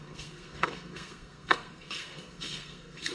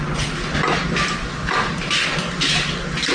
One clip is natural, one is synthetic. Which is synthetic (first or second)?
first